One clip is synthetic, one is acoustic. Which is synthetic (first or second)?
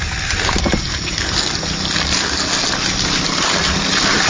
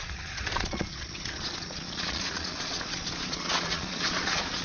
second